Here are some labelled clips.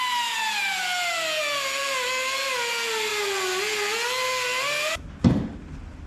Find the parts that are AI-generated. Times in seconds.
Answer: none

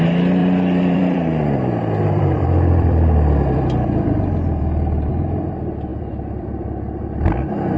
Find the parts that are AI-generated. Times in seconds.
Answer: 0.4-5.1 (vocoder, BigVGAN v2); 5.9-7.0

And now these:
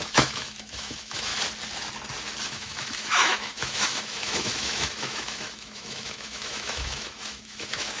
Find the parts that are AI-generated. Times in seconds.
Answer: 0.0-1.3 (autoencoder, DAC-VAE); 2.5-8.0

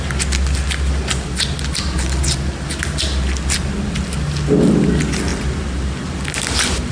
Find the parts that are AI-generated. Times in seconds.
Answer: none

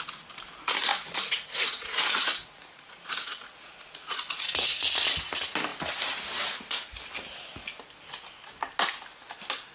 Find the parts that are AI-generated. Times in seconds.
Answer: 0.9-4.9 (vocoder, Vocos)